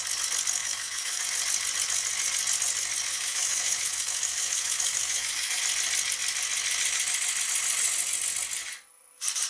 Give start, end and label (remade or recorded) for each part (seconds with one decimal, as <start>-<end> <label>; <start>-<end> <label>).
0.0-0.6 recorded; 0.6-1.2 remade; 1.2-3.1 recorded; 3.1-5.6 remade; 5.6-9.5 recorded